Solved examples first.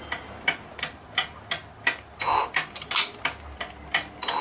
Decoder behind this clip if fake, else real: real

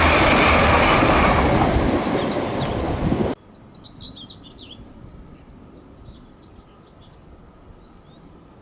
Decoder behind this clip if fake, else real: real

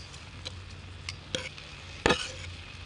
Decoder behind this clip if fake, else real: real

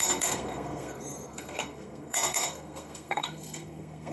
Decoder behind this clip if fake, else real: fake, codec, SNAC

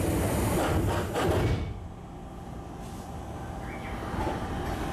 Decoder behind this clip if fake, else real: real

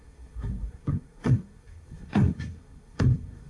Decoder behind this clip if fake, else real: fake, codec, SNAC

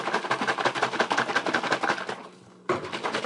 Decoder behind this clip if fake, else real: real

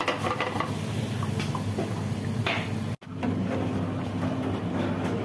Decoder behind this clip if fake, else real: real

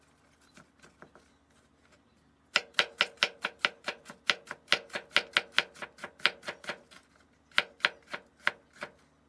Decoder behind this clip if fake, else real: real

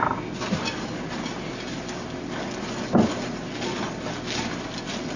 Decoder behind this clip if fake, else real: real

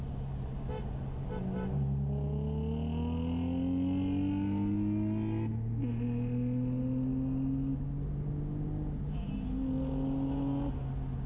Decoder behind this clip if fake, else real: real